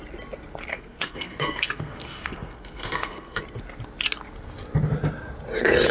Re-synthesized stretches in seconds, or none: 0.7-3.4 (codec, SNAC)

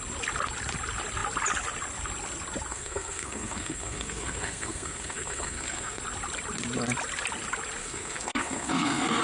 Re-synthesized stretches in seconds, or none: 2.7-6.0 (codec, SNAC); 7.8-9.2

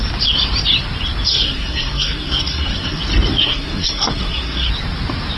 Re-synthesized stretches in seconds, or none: 1.3-3.0 (codec, SNAC); 3.4-4.7

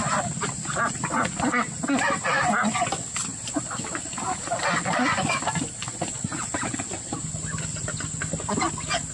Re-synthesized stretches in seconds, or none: none